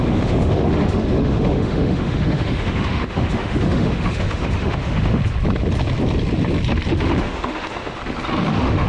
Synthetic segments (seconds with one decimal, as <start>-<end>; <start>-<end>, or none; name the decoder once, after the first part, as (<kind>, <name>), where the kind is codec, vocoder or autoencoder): 0.0-5.2 (autoencoder, DAC-VAE); 6.9-8.0; 8.5-8.9